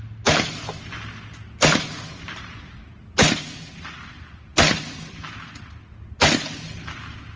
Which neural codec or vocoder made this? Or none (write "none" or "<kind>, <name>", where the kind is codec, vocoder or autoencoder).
none